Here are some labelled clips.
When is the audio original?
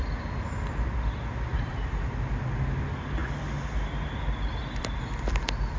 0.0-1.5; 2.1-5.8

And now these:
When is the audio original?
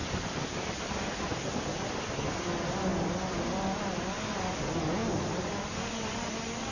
2.1-2.9; 3.7-6.7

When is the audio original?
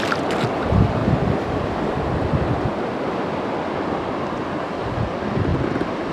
1.0-4.7; 5.5-6.1